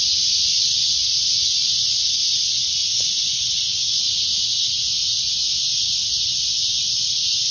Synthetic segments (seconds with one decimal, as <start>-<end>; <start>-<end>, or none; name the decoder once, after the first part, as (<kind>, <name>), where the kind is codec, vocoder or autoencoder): 2.8-4.4 (vocoder, Vocos)